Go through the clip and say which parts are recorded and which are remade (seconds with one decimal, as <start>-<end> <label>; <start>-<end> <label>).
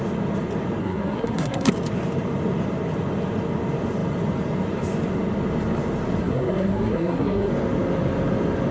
0.0-0.8 recorded; 0.8-1.7 remade; 1.7-6.2 recorded; 6.2-7.5 remade; 7.5-8.7 recorded